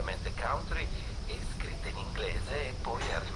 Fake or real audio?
fake